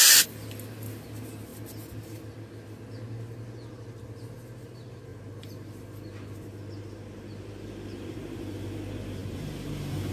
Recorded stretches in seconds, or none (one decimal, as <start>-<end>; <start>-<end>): 0.0-10.1